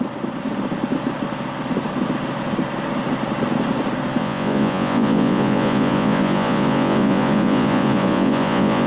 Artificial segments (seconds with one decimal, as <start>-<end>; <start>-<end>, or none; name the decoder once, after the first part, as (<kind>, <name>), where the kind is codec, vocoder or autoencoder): 4.2-8.9 (vocoder, Vocos)